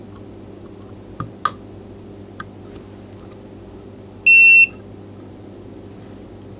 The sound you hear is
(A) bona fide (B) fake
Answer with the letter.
A